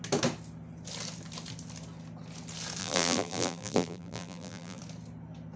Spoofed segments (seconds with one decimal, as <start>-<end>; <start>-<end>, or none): 2.8-4.8

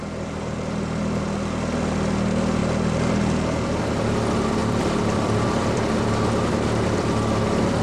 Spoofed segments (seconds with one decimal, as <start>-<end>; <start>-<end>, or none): 4.6-7.8